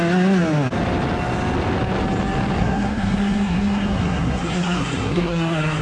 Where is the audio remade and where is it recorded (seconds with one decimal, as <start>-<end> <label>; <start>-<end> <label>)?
0.0-2.6 recorded; 2.6-5.8 remade